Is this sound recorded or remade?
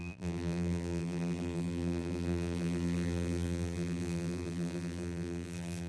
remade